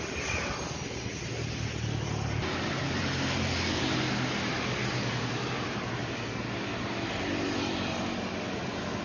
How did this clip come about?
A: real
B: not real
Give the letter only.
A